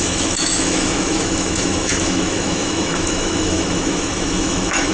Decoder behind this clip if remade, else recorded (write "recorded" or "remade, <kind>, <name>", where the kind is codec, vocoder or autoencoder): remade, autoencoder, DAC-VAE